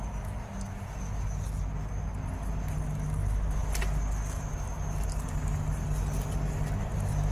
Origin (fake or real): real